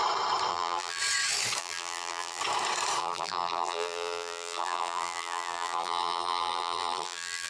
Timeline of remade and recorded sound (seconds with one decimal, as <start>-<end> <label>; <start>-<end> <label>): 0.0-0.5 recorded; 0.5-1.0 remade; 1.0-1.6 recorded; 1.6-2.4 remade; 2.4-3.0 recorded; 3.0-7.5 remade